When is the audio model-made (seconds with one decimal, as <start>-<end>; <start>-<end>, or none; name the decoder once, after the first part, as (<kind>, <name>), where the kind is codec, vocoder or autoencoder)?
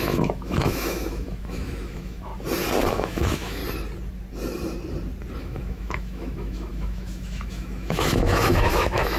0.0-2.3 (autoencoder, DAC-VAE); 2.9-3.6; 5.4-9.2